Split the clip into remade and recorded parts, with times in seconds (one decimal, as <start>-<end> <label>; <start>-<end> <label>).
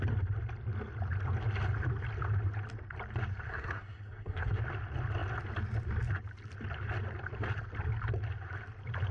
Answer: 0.0-3.5 recorded; 3.5-4.6 remade; 4.6-9.1 recorded